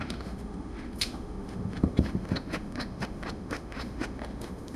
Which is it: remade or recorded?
remade